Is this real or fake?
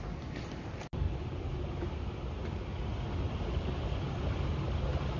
real